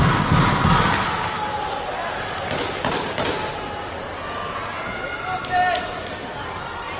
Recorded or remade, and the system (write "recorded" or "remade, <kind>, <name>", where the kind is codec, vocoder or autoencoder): recorded